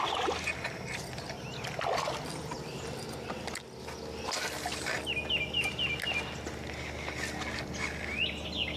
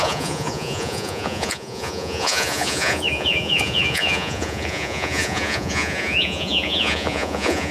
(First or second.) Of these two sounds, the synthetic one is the second